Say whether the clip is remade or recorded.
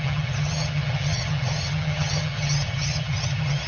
remade